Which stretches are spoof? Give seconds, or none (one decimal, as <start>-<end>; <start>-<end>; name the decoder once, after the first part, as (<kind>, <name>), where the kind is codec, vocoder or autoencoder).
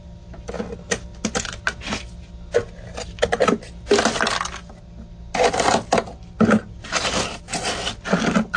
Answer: none